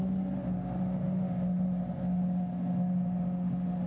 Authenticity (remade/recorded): recorded